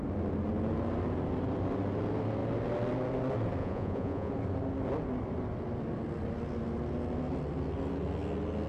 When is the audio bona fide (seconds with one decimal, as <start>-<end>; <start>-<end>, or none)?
0.0-3.6; 4.3-8.7